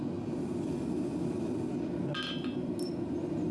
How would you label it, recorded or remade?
recorded